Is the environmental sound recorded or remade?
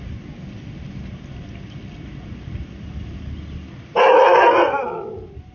recorded